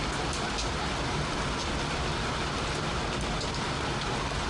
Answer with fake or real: real